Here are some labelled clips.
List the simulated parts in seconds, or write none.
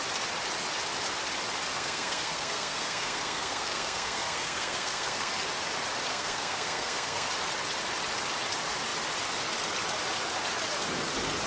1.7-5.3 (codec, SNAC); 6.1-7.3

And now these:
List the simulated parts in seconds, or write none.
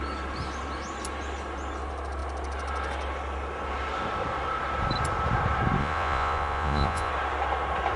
5.8-7.1 (vocoder, Vocos)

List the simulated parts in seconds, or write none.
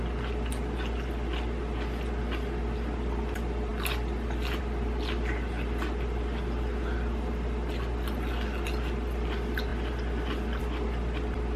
none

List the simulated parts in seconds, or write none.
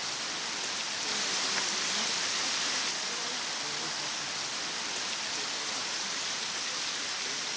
none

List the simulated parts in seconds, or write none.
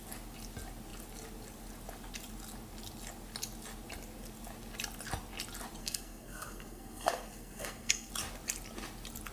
5.8-8.1 (codec, SNAC)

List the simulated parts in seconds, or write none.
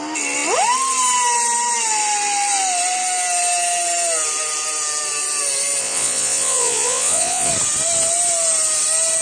5.8-7.5 (vocoder, Vocos)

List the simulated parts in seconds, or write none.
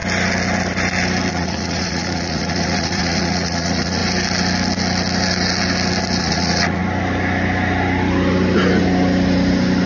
1.3-4.0 (vocoder, Vocos); 6.2-6.8